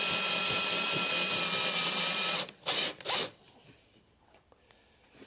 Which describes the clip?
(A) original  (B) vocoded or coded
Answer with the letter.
A